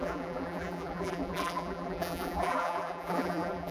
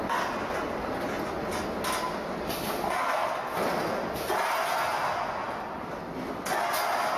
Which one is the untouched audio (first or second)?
second